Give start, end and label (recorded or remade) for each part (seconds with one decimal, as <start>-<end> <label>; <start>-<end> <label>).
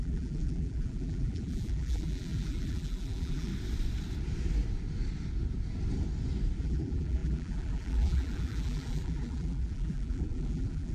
0.0-3.5 remade; 3.5-6.6 recorded; 6.6-10.9 remade